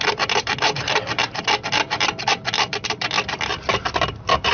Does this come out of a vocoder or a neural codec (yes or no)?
no